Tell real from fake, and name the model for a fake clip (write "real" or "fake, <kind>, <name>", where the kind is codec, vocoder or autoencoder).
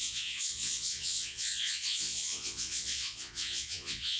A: fake, vocoder, Vocos